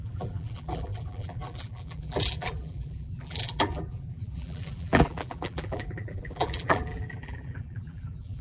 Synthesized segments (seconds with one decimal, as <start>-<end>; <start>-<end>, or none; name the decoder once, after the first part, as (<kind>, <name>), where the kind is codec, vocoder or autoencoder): 0.0-8.4 (vocoder, BigVGAN v2)